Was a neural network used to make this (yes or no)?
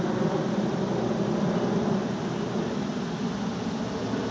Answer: no